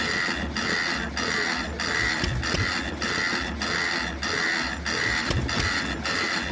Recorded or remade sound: recorded